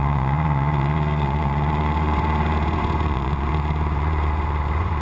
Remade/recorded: remade